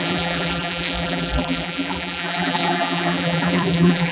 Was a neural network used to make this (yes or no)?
yes